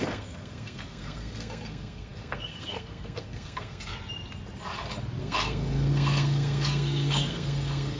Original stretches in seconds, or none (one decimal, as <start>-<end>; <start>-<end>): 3.9-5.2